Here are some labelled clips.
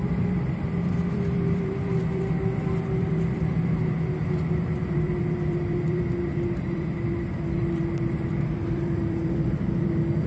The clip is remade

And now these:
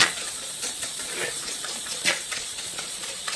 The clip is remade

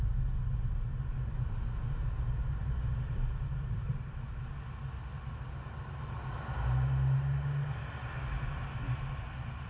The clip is recorded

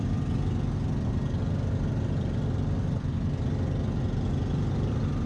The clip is recorded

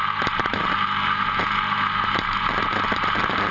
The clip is remade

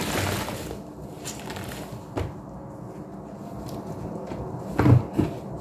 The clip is recorded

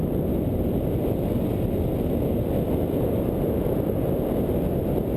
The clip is recorded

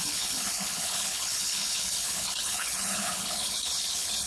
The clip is remade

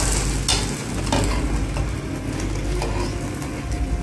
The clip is recorded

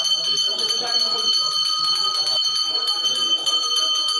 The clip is remade